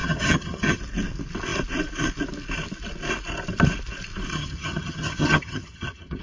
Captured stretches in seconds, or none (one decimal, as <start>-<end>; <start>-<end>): 0.8-4.3